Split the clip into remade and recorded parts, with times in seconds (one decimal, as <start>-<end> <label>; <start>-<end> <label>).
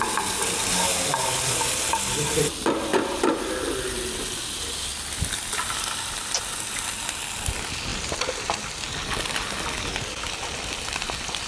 0.0-11.5 recorded